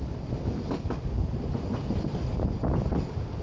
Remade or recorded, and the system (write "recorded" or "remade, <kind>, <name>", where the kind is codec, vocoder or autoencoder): recorded